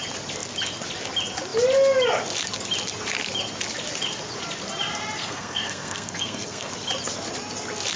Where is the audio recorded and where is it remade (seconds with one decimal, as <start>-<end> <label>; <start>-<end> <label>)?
0.0-5.2 recorded; 5.2-6.7 remade; 6.7-8.0 recorded